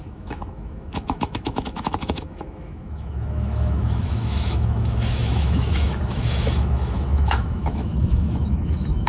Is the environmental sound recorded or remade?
remade